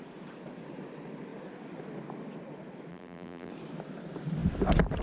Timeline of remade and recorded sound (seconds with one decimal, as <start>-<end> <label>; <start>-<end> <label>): 0.0-2.9 recorded; 2.9-3.5 remade; 3.5-5.0 recorded